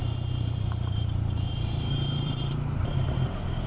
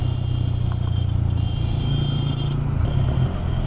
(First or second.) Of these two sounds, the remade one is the first